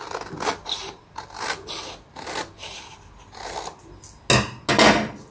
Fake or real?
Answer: real